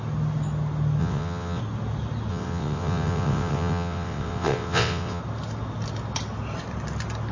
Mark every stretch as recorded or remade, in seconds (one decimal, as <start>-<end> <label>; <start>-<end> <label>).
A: 0.0-1.0 recorded; 1.0-1.6 remade; 1.6-2.3 recorded; 2.3-5.2 remade; 5.2-7.3 recorded